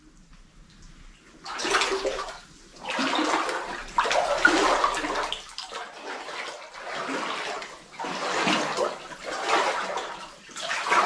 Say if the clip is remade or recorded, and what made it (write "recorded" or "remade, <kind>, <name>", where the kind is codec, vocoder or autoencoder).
recorded